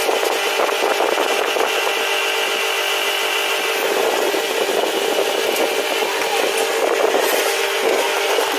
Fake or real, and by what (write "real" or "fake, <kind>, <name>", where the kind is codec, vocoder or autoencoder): real